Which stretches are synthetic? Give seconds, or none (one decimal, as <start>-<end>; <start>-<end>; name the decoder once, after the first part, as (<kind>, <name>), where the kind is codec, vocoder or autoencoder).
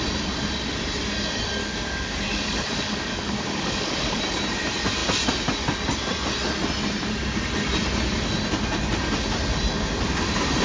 1.6-4.2 (codec, DAC)